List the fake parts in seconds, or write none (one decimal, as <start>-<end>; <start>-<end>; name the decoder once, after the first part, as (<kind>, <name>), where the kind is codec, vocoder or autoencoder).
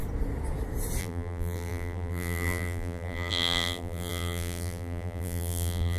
1.0-6.0 (vocoder, BigVGAN v2)